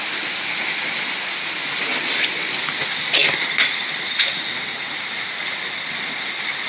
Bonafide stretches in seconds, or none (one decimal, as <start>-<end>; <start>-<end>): 0.0-6.7